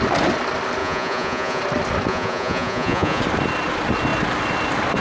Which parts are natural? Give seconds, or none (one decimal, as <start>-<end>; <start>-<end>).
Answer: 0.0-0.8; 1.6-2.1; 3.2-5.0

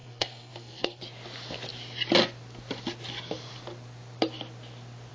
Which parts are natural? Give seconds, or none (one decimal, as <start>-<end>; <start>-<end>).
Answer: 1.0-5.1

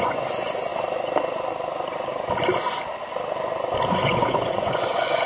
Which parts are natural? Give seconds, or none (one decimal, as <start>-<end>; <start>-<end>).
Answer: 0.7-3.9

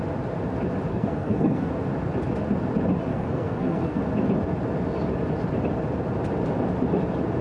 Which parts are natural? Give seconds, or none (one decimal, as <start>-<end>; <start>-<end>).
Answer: 0.0-0.9; 1.7-3.1; 4.0-7.4

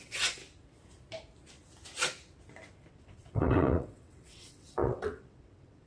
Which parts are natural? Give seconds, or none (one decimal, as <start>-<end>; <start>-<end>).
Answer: 0.4-2.9

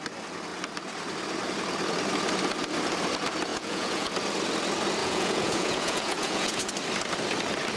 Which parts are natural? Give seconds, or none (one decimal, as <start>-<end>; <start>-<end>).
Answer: 0.0-3.5; 4.1-5.0; 6.7-7.8

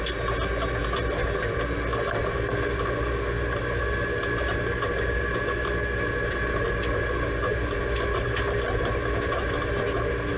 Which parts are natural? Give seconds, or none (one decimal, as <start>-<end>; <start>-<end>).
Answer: 0.0-10.4